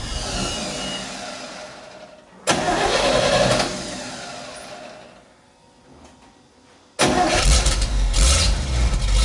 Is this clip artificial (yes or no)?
no